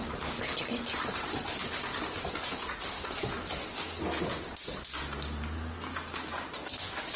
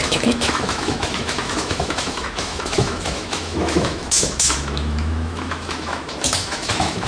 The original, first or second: first